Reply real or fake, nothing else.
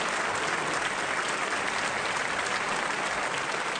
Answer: real